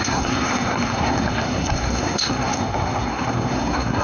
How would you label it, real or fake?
fake